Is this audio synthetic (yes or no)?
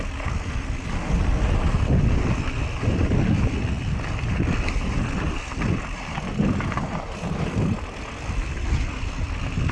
no